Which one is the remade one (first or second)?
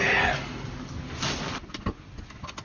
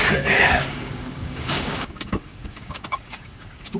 second